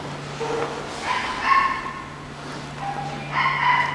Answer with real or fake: real